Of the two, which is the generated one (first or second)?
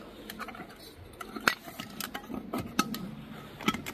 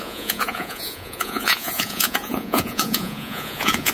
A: second